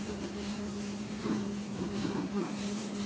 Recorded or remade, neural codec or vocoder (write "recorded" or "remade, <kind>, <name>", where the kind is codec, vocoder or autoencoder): remade, codec, SNAC